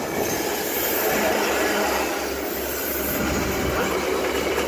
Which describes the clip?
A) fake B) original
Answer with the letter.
B